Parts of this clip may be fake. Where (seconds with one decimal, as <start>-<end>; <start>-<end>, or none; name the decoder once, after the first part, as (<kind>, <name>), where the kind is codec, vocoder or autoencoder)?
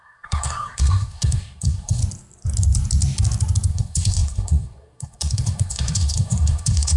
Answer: 0.0-2.0 (codec, SNAC); 3.7-7.0